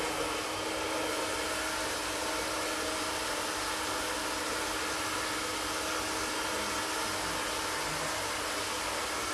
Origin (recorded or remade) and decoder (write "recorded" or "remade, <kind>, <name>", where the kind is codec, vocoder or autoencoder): recorded